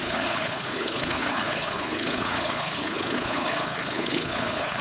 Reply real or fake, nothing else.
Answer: fake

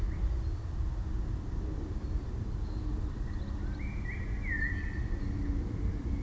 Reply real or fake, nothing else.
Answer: fake